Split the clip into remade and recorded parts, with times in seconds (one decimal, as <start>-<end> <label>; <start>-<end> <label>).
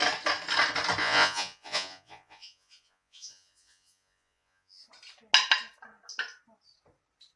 0.0-1.0 recorded; 1.0-4.8 remade; 4.8-7.4 recorded